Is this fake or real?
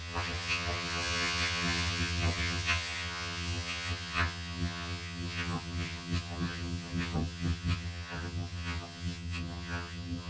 fake